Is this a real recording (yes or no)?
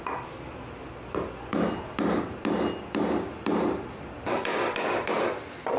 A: yes